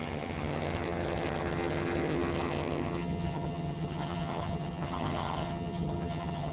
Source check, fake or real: fake